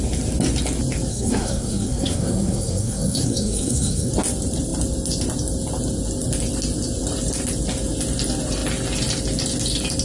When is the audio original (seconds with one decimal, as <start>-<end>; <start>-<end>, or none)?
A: 0.0-1.1; 4.1-10.0

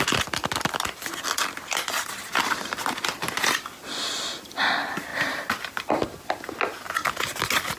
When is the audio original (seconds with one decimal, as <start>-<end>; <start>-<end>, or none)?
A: 0.0-5.1; 6.4-7.8

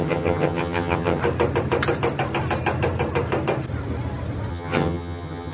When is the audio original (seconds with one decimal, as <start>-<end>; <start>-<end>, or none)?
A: 1.2-4.5

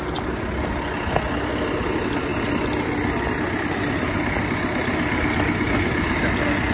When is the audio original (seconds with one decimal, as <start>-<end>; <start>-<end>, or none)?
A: 0.0-6.7